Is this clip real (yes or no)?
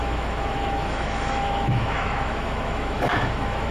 no